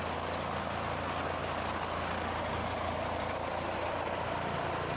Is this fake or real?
real